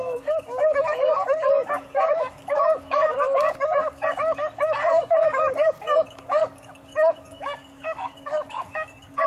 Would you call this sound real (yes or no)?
no